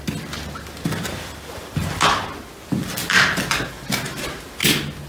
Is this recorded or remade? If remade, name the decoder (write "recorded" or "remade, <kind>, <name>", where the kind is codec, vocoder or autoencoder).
recorded